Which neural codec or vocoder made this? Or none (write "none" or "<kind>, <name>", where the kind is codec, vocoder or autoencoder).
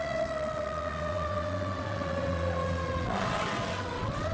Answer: vocoder, WaveNeXt